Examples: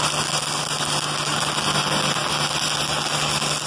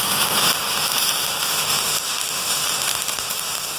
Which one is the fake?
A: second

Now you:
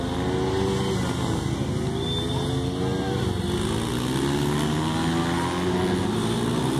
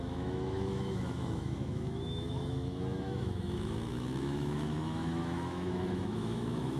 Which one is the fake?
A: second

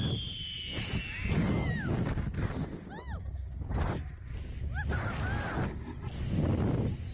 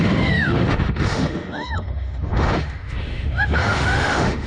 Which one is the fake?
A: second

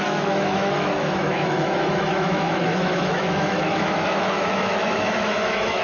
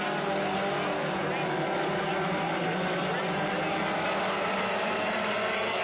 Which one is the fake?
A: first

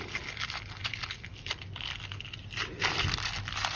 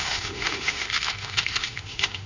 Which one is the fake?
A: second